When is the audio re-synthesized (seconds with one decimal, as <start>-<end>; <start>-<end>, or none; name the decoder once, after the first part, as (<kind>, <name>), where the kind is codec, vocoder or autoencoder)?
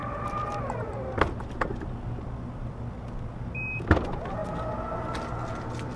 none